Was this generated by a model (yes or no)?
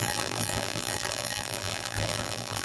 yes